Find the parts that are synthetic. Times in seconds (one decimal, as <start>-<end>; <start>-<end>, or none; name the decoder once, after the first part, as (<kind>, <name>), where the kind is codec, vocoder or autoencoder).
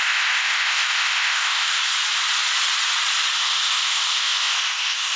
0.0-1.8 (codec, ZipCodec); 3.4-5.2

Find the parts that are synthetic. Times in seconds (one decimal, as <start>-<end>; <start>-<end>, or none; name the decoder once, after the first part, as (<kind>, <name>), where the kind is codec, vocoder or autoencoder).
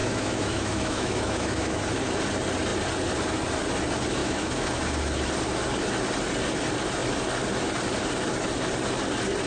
0.0-1.8 (autoencoder, DAC-VAE); 4.2-4.8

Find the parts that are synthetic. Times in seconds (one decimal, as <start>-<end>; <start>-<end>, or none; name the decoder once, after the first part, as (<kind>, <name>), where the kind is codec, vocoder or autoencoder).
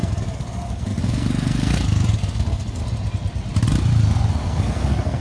0.0-2.8 (codec, SNAC); 4.3-5.2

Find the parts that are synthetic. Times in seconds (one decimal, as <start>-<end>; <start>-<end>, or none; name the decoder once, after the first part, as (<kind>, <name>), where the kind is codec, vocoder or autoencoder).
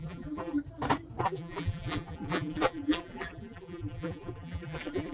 0.0-0.6 (vocoder, BigVGAN v2); 1.2-5.1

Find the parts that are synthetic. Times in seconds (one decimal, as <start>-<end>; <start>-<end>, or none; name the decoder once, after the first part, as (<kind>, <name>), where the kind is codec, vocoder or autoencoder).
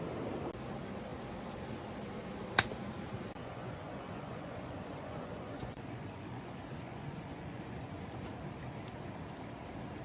3.4-8.3 (vocoder, Vocos)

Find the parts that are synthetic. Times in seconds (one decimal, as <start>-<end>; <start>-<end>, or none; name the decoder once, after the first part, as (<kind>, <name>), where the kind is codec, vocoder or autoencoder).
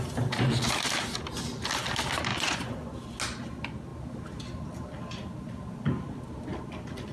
2.3-2.9 (vocoder, Vocos)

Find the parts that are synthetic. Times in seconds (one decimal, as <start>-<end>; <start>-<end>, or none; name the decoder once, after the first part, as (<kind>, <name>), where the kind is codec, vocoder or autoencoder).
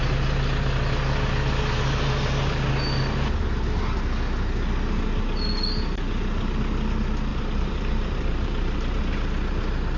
7.3-9.0 (vocoder, BigVGAN v2)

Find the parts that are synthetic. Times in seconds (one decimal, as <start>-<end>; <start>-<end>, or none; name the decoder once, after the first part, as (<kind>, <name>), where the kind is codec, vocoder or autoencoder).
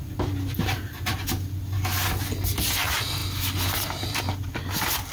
none